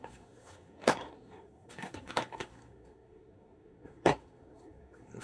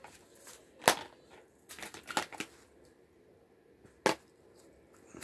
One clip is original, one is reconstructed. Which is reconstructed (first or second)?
first